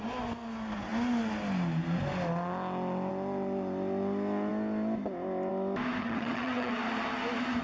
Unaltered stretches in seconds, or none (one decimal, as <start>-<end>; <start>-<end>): 0.0-6.0; 6.7-7.6